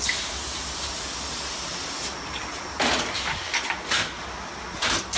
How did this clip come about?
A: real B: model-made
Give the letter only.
A